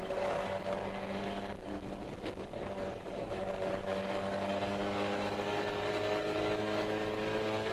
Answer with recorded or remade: remade